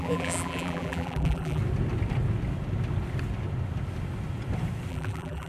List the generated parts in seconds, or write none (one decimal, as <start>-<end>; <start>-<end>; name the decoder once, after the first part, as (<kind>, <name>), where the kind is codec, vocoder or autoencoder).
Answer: 0.0-1.6 (vocoder, BigVGAN v2); 4.9-5.5

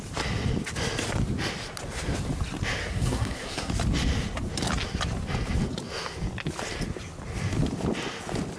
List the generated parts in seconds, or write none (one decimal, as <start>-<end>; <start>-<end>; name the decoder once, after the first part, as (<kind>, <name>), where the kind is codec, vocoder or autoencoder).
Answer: 2.8-3.7 (codec, SNAC)

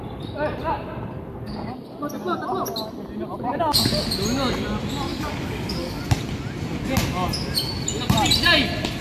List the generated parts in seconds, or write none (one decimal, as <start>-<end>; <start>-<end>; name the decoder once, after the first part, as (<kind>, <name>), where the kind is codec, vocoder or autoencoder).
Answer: 5.1-6.0 (codec, DAC)

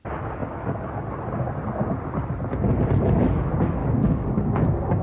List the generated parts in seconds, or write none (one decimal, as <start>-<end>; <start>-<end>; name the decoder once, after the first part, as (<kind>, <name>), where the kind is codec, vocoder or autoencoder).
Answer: 3.8-5.0 (codec, DAC)

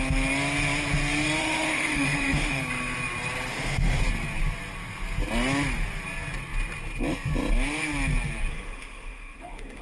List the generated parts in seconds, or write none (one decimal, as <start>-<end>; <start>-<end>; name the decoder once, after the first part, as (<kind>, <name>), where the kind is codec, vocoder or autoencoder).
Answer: 1.4-2.6 (autoencoder, DAC-VAE); 3.5-4.0; 8.5-9.8

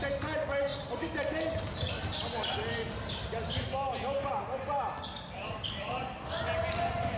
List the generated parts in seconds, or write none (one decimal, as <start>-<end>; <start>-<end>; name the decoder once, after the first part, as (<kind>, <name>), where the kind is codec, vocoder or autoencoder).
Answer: none